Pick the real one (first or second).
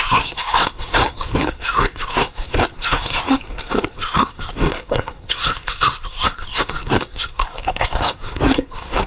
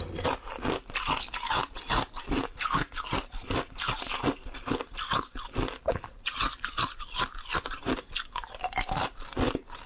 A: second